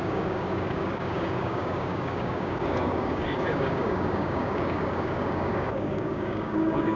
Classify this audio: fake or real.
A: fake